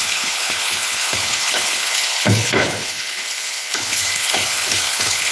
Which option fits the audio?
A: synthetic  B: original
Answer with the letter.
A